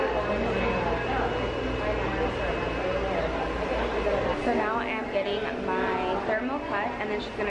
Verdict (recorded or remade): recorded